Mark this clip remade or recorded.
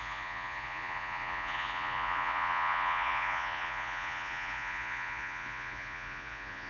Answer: remade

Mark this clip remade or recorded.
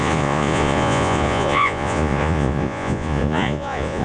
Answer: remade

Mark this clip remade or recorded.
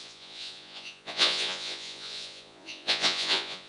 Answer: remade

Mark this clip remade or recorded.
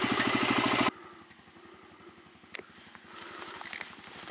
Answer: recorded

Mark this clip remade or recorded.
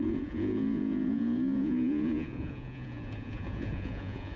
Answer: remade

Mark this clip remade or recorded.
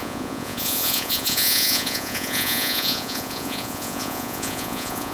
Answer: remade